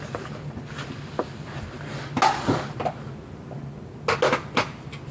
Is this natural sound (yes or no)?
yes